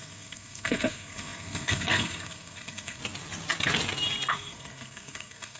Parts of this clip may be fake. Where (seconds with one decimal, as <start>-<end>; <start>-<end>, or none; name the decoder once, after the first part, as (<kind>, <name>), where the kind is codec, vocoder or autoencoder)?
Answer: 0.0-3.0 (codec, SNAC); 4.3-5.6

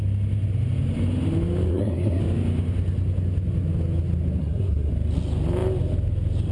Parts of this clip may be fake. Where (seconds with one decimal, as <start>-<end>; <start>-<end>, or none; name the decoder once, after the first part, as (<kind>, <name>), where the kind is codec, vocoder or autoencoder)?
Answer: 1.7-2.2 (codec, SNAC); 4.4-4.9